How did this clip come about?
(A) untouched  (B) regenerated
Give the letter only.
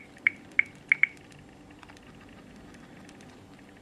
A